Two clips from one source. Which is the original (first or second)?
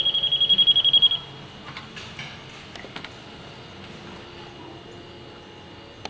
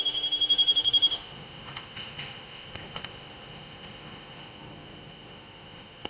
first